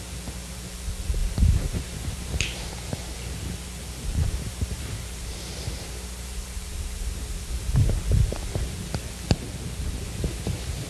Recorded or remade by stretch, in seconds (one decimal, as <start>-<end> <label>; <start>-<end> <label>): 0.0-1.2 recorded; 1.2-2.7 remade; 2.7-4.2 recorded; 4.2-8.0 remade; 8.0-10.9 recorded